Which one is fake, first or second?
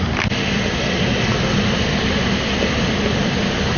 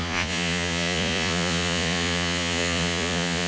second